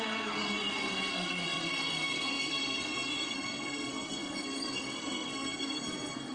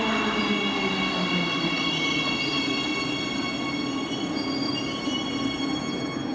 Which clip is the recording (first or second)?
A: second